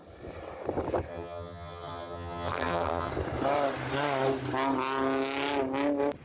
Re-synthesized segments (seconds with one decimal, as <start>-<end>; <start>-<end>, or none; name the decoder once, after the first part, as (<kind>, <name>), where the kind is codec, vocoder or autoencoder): 1.1-3.1 (vocoder, HiFi-GAN)